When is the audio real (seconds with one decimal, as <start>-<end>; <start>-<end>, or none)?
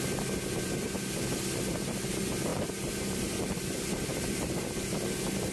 0.0-5.5